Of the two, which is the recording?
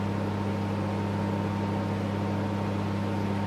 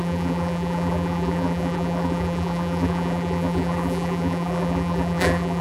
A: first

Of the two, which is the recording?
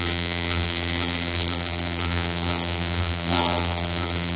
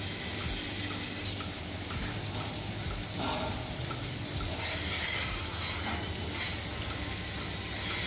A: second